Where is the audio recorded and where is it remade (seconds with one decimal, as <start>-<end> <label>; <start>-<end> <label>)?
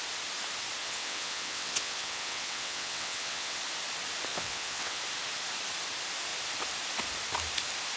0.0-0.8 recorded; 0.8-3.6 remade; 3.6-4.3 recorded; 4.3-5.0 remade; 5.0-8.0 recorded